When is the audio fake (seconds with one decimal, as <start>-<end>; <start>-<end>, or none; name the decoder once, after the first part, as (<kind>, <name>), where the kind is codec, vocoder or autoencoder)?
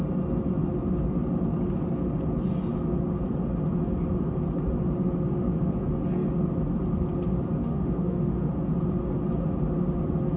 7.6-8.5 (autoencoder, DAC-VAE)